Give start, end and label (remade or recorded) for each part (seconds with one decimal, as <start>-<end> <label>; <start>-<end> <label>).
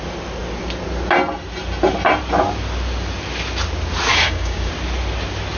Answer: 0.0-4.1 recorded; 4.1-4.7 remade; 4.7-5.6 recorded